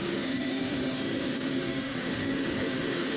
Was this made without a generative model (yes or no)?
no